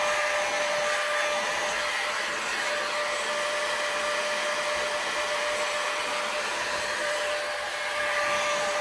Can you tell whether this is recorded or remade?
recorded